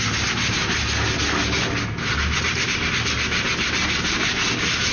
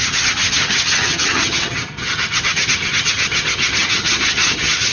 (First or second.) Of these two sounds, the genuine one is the first